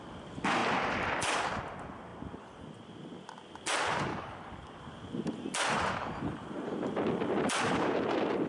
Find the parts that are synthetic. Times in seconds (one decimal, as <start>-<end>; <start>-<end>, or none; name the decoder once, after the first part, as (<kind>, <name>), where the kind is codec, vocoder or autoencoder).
4.1-4.8 (codec, DAC)